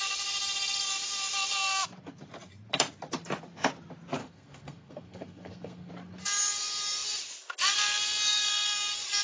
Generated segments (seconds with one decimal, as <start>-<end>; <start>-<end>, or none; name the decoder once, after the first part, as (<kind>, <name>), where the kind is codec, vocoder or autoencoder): 4.2-5.9 (codec, SNAC)